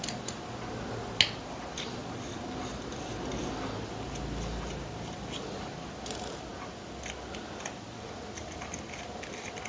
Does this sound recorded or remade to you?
recorded